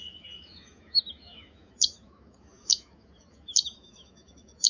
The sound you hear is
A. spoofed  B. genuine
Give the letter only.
A